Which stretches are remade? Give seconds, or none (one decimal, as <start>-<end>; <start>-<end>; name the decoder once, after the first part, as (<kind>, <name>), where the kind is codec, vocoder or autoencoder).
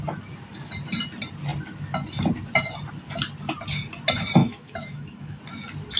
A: 4.4-5.4 (autoencoder, DAC-VAE)